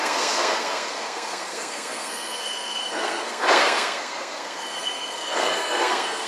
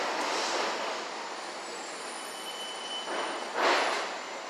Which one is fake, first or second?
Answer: first